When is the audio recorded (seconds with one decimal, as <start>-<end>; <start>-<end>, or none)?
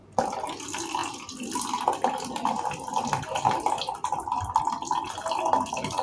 0.0-6.0